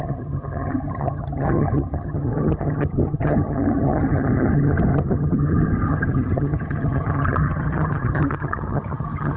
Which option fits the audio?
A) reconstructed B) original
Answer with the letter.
A